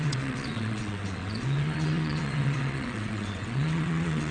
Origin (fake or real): fake